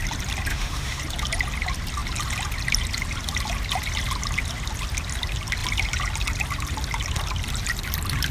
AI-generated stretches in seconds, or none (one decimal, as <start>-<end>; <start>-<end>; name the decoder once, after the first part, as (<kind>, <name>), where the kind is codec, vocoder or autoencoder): 0.5-1.0 (autoencoder, DAC-VAE)